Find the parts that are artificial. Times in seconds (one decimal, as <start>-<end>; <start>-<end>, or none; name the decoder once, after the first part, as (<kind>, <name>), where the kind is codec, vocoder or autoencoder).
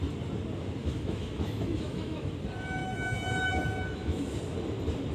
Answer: 0.8-2.3 (autoencoder, DAC-VAE); 2.8-4.3